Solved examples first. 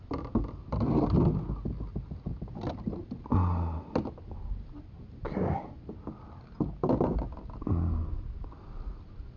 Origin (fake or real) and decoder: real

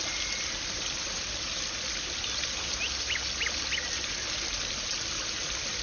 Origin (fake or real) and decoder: real